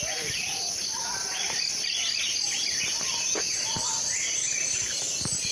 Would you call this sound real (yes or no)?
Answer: yes